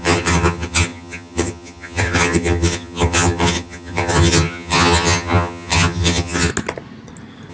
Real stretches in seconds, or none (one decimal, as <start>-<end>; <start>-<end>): 6.5-7.5